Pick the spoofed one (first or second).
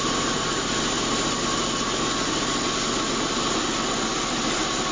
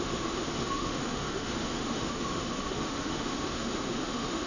second